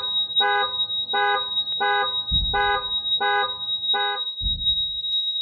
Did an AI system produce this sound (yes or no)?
no